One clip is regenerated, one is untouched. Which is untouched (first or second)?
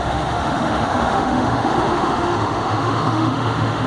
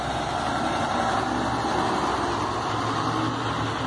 second